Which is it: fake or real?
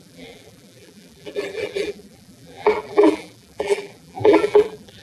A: fake